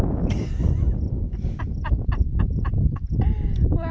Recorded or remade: recorded